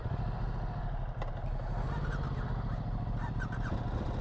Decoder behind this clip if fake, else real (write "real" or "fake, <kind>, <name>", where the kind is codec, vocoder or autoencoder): real